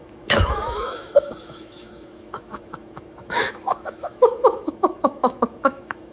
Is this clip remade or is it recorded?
remade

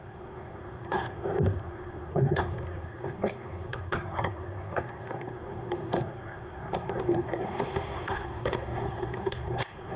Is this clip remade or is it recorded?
remade